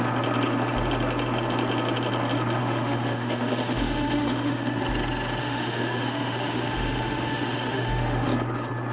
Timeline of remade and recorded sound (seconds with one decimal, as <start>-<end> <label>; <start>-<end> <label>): 0.0-2.6 recorded; 2.6-4.8 remade; 4.8-5.4 recorded; 5.4-8.3 remade; 8.3-8.9 recorded